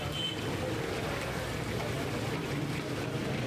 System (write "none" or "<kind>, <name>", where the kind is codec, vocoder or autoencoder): none